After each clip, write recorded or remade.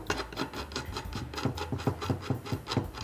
recorded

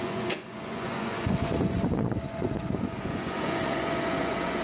remade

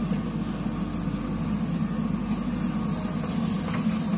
recorded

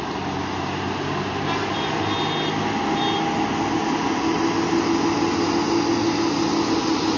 recorded